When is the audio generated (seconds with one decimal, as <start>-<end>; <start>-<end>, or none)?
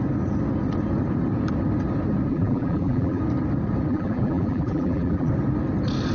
2.3-3.2; 3.9-5.3